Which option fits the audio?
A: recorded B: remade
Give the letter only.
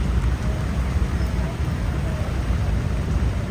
B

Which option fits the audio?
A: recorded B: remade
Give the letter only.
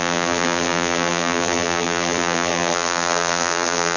B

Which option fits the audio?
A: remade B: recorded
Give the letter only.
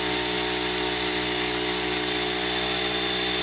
A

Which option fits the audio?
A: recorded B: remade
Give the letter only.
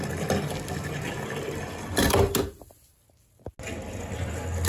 A